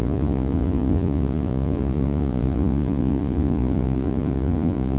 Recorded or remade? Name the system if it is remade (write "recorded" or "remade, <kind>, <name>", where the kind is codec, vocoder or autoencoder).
remade, vocoder, Vocos